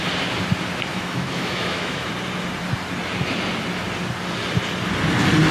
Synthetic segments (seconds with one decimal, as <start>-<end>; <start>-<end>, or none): 0.9-2.1

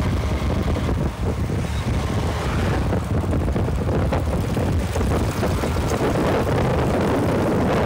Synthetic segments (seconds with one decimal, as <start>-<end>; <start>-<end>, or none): none

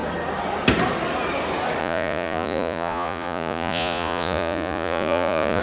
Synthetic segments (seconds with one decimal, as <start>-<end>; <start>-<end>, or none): 1.8-5.6

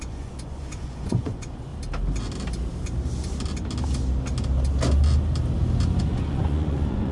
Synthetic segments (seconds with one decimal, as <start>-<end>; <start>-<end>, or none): 0.0-1.7; 6.0-7.1

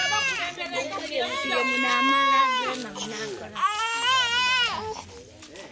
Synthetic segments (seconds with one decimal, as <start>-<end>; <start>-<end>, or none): none

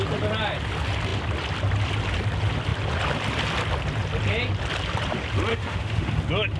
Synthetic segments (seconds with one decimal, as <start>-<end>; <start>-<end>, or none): 5.5-6.1

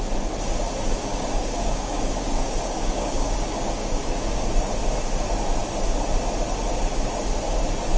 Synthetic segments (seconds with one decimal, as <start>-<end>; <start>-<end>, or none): 1.1-4.5